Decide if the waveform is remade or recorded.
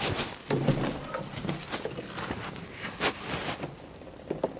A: recorded